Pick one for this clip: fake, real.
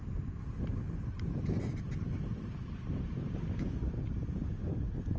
fake